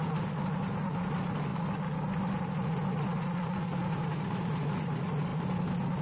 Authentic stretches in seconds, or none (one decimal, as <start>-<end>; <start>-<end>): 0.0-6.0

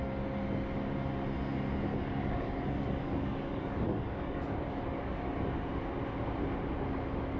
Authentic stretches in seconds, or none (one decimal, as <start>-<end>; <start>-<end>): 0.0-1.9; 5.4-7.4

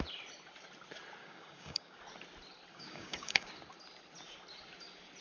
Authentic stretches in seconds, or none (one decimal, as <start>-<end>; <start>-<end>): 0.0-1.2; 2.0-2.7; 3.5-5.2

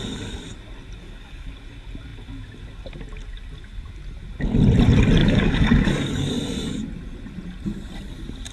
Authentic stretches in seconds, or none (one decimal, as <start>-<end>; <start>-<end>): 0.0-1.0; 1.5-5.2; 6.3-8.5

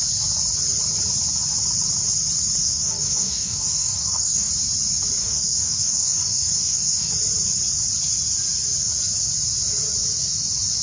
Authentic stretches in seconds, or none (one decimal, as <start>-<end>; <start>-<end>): 0.0-2.6; 4.5-5.2; 7.1-10.8

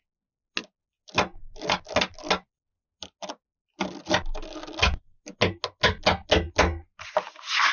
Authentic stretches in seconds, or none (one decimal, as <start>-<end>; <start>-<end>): 0.0-7.7

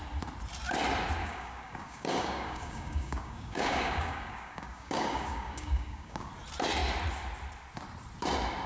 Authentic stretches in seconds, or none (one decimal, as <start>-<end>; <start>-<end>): 0.0-1.2; 6.3-8.7